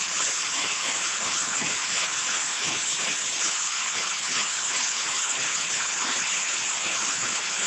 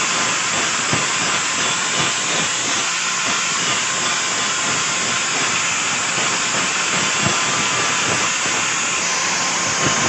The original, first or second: second